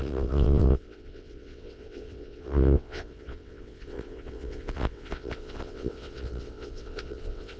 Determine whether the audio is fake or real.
fake